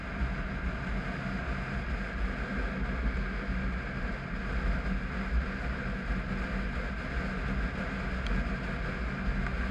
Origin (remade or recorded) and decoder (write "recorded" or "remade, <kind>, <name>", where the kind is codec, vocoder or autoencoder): recorded